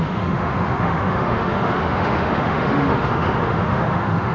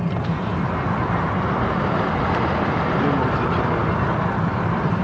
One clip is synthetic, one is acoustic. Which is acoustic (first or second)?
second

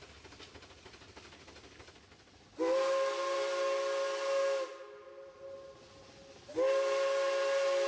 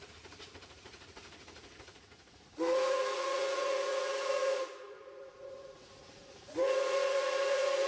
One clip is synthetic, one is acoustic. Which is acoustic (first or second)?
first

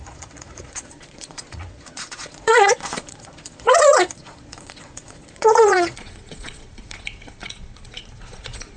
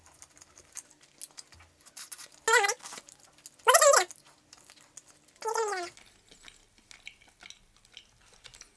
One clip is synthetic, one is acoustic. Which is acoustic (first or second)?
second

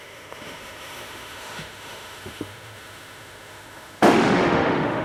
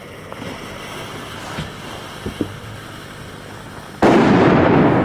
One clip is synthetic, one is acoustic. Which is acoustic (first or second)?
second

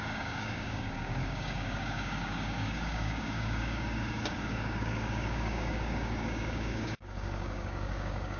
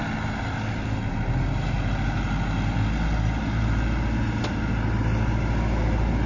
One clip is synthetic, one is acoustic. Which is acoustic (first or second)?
second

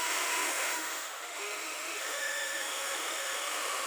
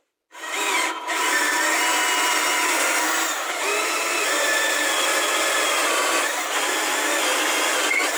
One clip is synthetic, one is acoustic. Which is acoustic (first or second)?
second